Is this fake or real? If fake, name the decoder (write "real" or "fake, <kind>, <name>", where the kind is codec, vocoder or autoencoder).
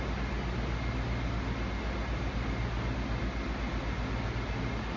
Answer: real